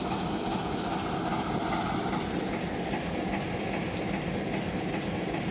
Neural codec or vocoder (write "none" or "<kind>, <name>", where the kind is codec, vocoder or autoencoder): none